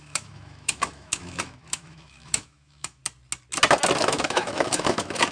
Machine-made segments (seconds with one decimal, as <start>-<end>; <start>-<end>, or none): 0.0-3.0; 4.0-5.3

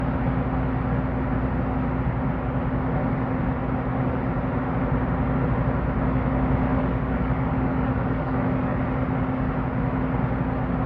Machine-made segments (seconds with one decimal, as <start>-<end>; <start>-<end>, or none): 6.7-8.8

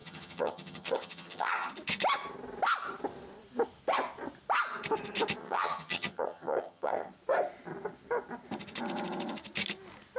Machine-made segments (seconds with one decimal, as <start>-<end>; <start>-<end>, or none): 0.0-1.7; 5.4-7.1

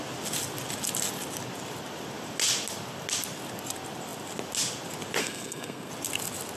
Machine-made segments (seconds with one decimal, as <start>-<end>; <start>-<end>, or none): 5.2-5.9

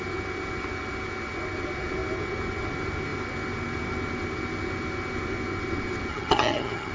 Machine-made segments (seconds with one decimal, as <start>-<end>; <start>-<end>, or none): 6.1-6.9

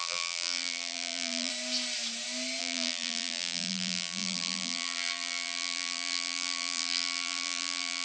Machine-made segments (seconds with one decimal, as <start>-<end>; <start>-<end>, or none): 0.0-1.5; 2.6-8.0

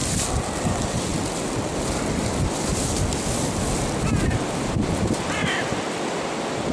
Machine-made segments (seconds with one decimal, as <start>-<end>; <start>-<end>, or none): none